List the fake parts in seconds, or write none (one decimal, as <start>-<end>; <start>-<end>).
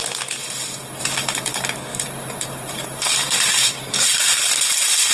0.4-1.0; 1.9-5.1